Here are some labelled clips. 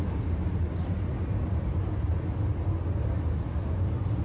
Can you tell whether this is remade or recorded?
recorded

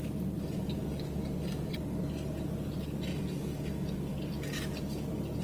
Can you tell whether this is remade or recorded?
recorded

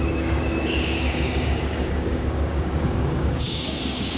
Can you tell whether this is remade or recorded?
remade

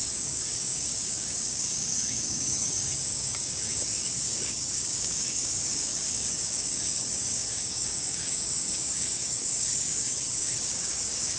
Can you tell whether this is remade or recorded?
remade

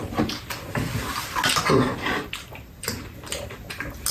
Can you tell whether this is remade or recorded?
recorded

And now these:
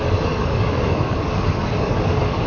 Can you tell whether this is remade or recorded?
remade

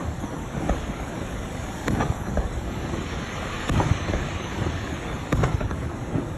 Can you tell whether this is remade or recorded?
remade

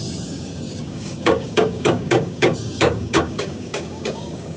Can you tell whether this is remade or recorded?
remade